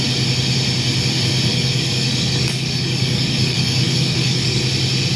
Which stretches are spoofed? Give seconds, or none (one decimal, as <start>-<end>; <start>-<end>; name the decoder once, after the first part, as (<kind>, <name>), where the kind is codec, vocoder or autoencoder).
1.5-4.6 (codec, DAC)